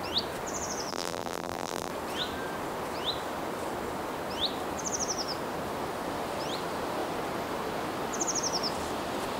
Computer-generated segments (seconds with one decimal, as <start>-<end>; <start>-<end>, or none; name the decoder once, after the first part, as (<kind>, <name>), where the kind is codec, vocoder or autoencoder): 0.9-1.9 (vocoder, BigVGAN v2)